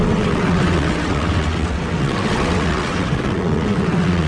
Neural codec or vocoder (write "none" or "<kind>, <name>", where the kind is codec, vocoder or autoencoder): vocoder, WaveNeXt